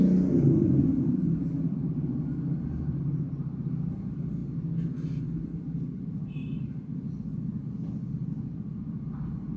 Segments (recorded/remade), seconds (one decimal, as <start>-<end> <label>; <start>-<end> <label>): 0.0-1.8 recorded; 1.8-4.0 remade; 4.0-6.4 recorded; 6.4-7.7 remade; 7.7-9.6 recorded